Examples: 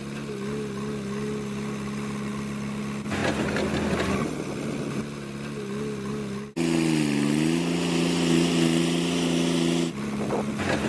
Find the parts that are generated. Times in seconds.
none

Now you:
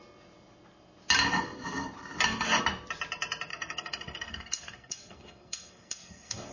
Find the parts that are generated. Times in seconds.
3.5-6.5 (codec, SNAC)

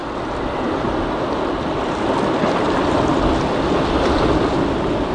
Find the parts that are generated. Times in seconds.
none